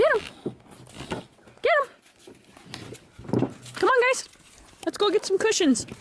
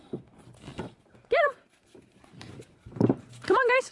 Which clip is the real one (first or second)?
first